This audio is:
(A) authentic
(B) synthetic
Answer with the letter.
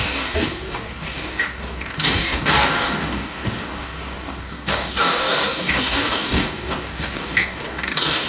B